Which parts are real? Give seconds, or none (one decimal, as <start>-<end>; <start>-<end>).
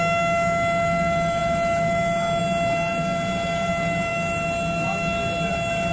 0.0-5.9